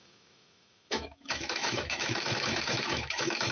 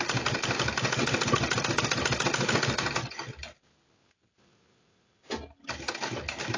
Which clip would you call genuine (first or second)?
second